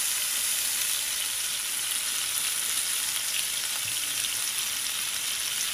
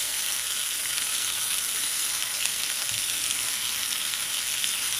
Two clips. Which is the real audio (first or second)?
first